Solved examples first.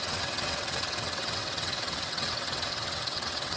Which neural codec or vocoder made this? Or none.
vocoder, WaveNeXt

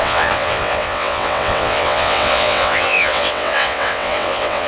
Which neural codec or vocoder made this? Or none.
vocoder, WaveNeXt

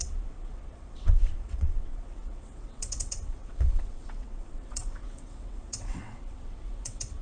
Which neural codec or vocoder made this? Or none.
vocoder, WaveNeXt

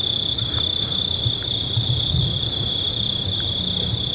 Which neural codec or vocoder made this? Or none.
none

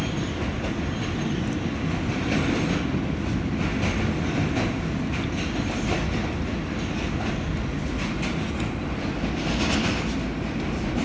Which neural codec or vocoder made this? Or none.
none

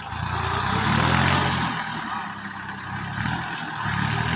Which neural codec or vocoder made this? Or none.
none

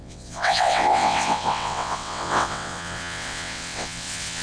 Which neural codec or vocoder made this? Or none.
vocoder, WaveNeXt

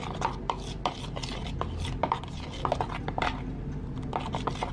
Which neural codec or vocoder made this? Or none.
none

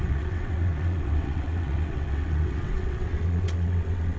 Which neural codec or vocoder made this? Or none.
vocoder, WaveNeXt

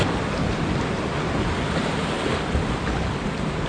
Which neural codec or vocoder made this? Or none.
none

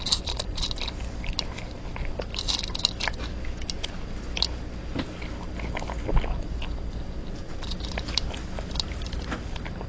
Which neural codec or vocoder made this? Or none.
none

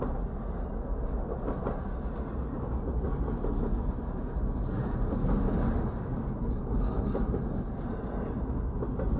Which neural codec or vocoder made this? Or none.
none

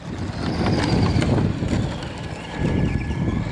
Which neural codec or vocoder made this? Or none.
none